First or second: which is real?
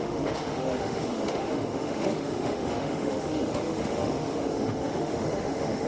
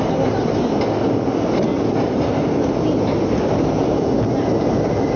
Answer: second